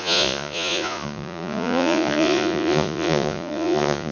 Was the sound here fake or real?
fake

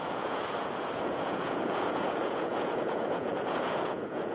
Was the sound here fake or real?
fake